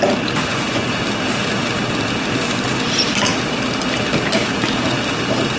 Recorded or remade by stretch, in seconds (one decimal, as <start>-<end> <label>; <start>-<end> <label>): 0.0-0.5 recorded; 0.5-1.0 remade; 1.0-5.6 recorded